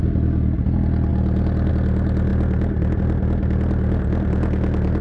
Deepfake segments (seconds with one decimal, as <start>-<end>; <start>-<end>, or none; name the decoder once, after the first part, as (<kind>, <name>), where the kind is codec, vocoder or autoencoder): none